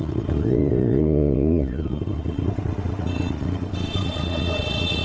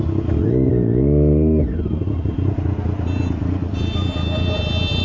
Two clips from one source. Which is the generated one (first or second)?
first